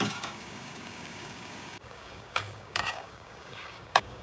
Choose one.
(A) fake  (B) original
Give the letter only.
A